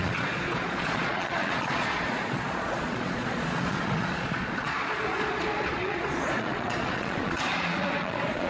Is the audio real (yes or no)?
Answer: no